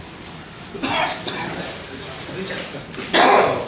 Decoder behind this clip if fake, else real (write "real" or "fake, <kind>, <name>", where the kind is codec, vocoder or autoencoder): real